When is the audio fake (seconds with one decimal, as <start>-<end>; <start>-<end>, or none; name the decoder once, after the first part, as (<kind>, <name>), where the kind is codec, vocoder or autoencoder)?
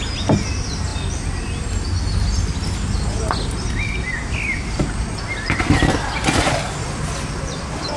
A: none